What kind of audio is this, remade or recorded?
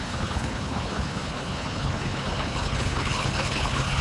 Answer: remade